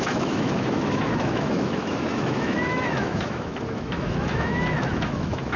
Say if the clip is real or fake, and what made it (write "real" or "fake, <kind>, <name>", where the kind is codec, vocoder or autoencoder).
fake, autoencoder, DAC-VAE